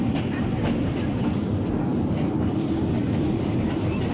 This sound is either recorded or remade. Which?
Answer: recorded